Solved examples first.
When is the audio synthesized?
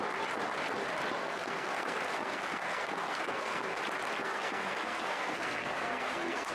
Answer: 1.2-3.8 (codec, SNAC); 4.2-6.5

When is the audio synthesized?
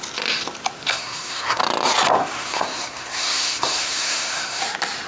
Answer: 0.9-1.6 (codec, SNAC); 2.2-4.6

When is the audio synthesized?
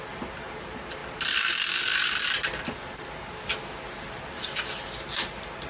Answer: none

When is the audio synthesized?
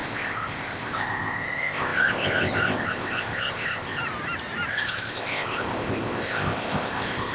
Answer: 0.0-4.0 (codec, ZipCodec); 4.7-7.3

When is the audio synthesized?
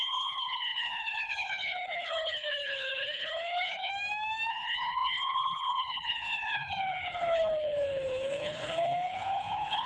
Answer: 0.0-3.9 (codec, HILCodec); 4.5-9.9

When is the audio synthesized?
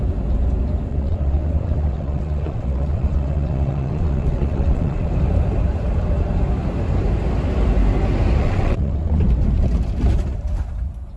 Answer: 0.9-5.1 (vocoder, WaveNeXt); 8.4-9.2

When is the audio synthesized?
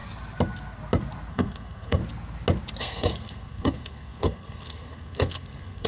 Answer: 1.3-2.0 (codec, SNAC); 2.8-5.9